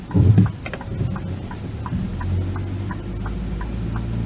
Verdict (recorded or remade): recorded